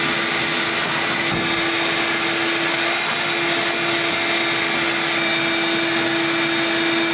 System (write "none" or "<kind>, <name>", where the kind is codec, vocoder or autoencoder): none